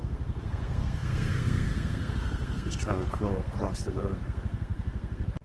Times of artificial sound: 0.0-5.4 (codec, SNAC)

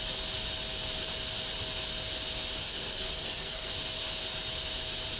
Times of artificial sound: 2.6-3.7 (codec, SNAC)

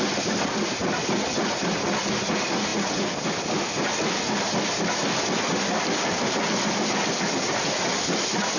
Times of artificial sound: none

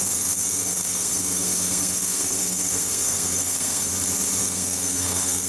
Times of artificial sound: 0.0-3.9 (codec, SNAC); 4.4-5.5

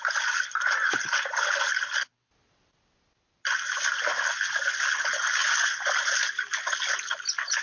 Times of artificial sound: none

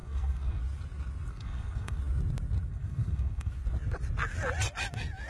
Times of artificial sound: 0.0-0.6 (codec, SNAC); 1.3-2.0; 2.7-3.5

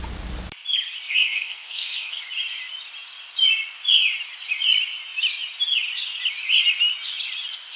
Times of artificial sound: 1.1-2.2 (codec, SNAC)